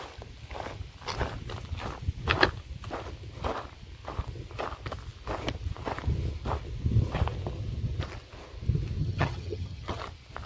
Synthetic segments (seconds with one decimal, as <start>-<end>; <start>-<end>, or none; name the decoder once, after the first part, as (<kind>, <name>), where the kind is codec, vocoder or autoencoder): 9.0-10.0 (vocoder, HiFi-GAN)

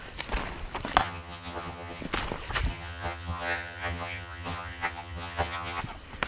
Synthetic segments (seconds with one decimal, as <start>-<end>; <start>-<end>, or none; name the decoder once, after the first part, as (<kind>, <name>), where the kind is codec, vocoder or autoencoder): 1.0-2.0 (vocoder, HiFi-GAN); 2.7-5.8